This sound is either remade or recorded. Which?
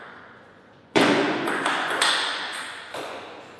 remade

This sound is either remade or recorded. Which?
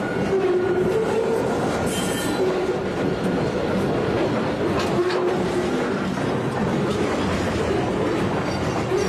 recorded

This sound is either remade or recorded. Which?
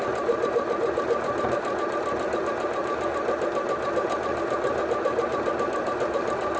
recorded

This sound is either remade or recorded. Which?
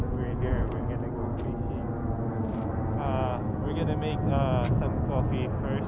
recorded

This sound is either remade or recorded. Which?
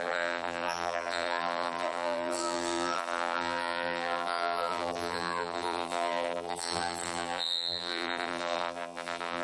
remade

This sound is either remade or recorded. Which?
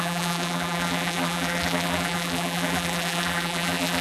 remade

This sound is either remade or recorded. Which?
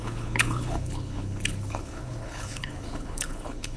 remade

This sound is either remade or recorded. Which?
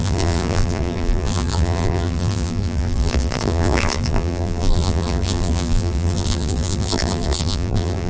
remade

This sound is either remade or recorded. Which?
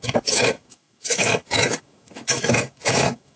remade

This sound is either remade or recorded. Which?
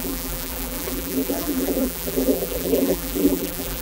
remade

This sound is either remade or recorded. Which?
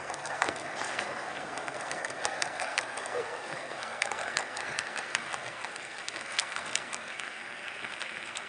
remade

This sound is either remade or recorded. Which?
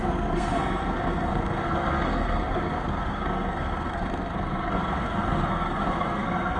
remade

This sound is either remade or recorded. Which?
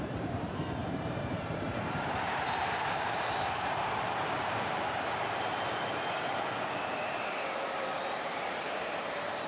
remade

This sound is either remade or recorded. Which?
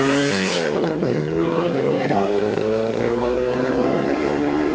remade